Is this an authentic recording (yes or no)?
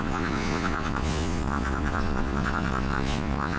no